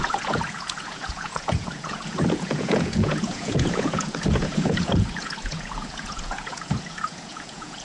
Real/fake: fake